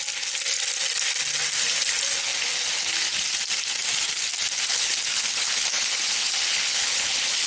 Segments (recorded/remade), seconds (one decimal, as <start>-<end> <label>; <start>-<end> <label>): 0.0-4.7 recorded; 4.7-7.5 remade